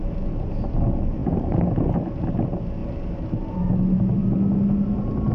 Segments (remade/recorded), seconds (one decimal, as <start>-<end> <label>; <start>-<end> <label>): 0.0-1.2 recorded; 1.2-2.2 remade; 2.2-5.3 recorded